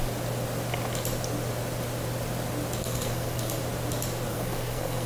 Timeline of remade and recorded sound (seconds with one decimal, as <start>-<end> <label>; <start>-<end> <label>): 0.0-2.8 recorded; 2.8-3.6 remade; 3.6-4.3 recorded; 4.3-5.1 remade